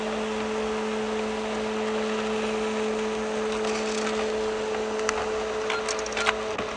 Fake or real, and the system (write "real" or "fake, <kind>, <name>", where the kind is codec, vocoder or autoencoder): real